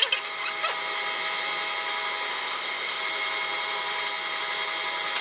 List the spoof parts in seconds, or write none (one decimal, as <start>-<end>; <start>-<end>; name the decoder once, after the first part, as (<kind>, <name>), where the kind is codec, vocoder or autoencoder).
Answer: 2.3-3.0 (codec, ZipCodec)